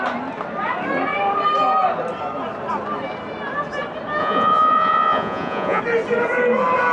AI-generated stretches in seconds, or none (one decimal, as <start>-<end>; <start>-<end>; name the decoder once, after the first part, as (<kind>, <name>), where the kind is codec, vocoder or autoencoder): 4.2-5.8 (vocoder, Vocos)